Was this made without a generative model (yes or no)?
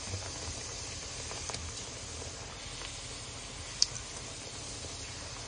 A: yes